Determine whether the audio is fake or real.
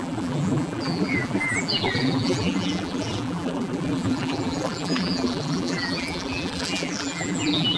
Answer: fake